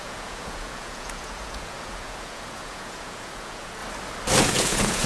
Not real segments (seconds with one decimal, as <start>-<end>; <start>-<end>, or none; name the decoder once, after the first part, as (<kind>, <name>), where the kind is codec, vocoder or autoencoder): 0.0-3.8 (vocoder, Vocos); 4.4-5.1